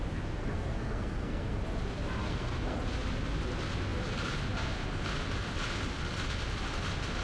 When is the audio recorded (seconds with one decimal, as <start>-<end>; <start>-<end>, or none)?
0.0-0.4; 1.6-2.2; 2.8-7.2